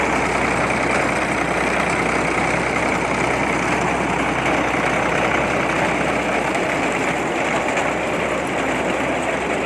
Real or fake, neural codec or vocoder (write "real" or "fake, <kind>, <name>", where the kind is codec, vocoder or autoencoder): real